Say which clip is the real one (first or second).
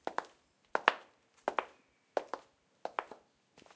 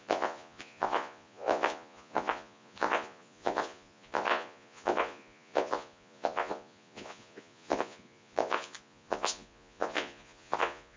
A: first